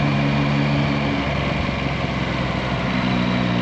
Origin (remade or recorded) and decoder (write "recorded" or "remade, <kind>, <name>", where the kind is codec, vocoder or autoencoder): recorded